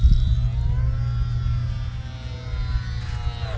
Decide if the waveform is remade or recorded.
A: recorded